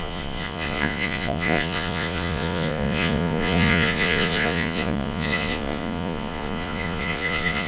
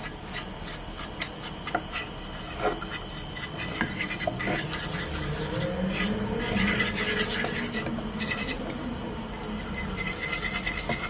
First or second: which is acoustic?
second